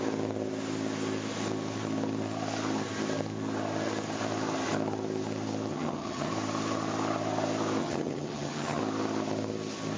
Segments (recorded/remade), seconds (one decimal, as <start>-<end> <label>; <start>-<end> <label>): 0.0-5.7 recorded; 5.7-6.3 remade; 6.3-7.8 recorded; 7.8-8.8 remade; 8.8-10.0 recorded